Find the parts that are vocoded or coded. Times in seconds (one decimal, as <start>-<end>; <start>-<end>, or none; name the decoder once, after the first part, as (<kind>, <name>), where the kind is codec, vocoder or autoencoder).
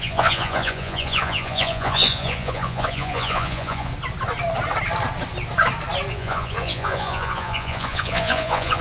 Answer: 0.0-3.9 (vocoder, Vocos); 6.1-8.8